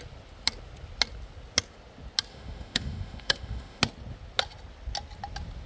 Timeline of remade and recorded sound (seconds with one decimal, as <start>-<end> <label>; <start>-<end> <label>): 0.0-2.3 recorded; 2.3-3.8 remade; 3.8-5.7 recorded